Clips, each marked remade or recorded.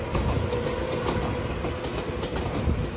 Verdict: recorded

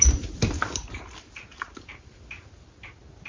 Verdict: recorded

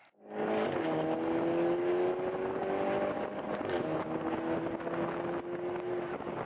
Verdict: recorded